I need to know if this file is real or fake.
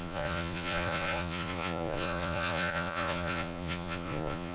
fake